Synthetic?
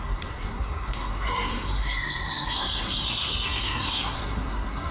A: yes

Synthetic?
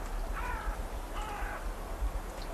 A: no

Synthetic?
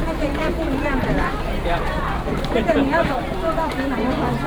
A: no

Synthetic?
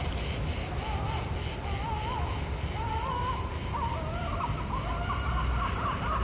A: no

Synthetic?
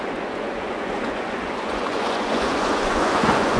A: yes